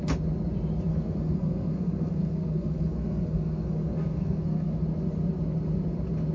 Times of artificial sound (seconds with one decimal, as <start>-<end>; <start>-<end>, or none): 0.9-4.7

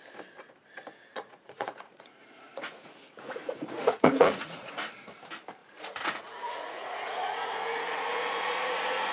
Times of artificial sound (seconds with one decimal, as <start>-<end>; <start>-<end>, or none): 1.1-5.1; 5.6-9.1

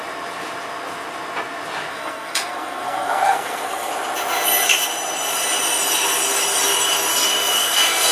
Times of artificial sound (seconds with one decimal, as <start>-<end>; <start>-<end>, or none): 1.9-3.9; 7.1-8.1

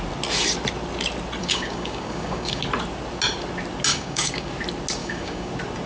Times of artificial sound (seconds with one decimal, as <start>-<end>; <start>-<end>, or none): 1.4-2.6; 3.9-4.5; 5.0-5.5